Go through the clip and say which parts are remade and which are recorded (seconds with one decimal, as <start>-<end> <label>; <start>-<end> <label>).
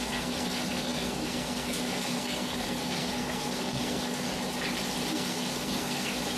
0.0-4.3 remade; 4.3-5.1 recorded; 5.1-6.4 remade